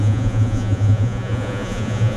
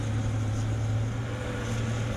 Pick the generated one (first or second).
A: first